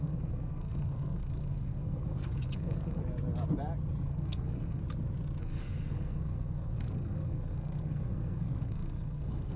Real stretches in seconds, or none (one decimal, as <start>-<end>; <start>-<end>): 3.0-4.1; 4.8-5.4